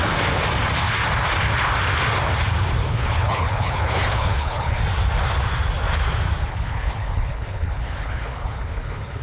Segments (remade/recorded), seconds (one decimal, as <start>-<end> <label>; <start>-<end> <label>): 0.0-2.9 recorded; 2.9-4.8 remade; 4.8-6.5 recorded; 6.5-9.2 remade